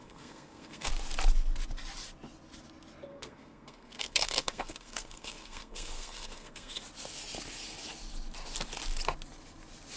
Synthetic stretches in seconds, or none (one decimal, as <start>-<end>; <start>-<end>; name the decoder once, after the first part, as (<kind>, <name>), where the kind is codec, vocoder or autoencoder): 0.0-0.9 (codec, SNAC); 3.1-6.8